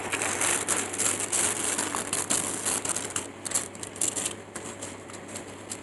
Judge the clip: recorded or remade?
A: recorded